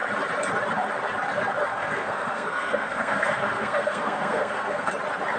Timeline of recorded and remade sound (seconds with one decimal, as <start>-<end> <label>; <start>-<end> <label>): 0.0-1.7 recorded; 1.7-4.9 remade; 4.9-5.4 recorded